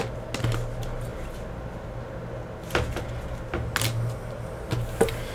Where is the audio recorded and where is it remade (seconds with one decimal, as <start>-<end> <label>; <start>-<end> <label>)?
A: 0.0-5.3 recorded